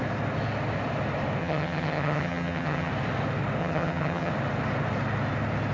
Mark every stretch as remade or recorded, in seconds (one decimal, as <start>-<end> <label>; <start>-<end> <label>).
0.0-1.4 recorded; 1.4-2.9 remade; 2.9-3.6 recorded; 3.6-4.3 remade; 4.3-5.7 recorded